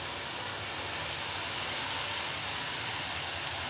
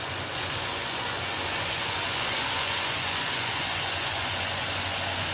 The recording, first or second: first